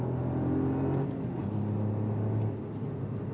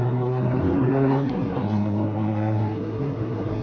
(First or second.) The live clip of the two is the first